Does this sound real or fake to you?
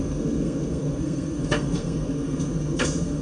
fake